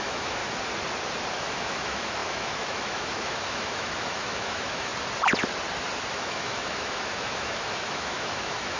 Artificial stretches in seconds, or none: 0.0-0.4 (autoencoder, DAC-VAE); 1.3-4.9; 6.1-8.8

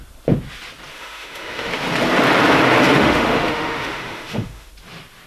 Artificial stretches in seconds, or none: 0.9-1.7 (autoencoder, DAC-VAE); 2.9-4.7

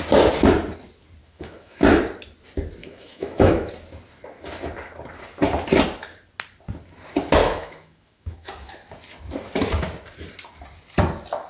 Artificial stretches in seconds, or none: 1.2-2.0 (autoencoder, DAC-VAE); 2.8-3.7; 7.4-8.7